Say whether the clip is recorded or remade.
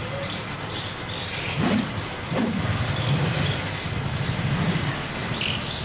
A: recorded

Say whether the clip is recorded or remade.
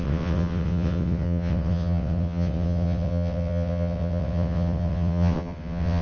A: remade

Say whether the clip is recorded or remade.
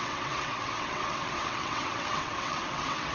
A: remade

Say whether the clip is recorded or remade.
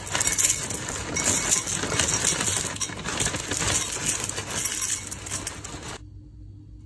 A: recorded